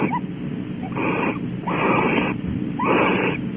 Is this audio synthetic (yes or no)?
no